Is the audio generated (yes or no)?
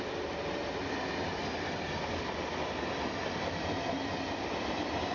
no